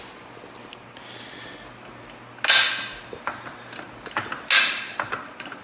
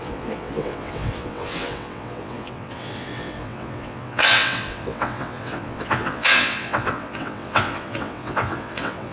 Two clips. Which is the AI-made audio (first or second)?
second